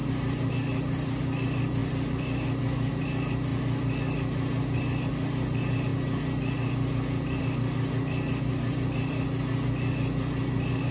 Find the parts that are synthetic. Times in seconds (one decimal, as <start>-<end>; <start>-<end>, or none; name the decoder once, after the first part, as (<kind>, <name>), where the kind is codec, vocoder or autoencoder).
none